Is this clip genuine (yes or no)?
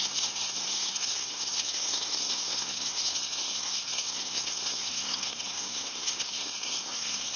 no